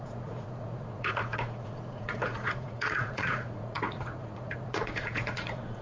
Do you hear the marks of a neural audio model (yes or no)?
yes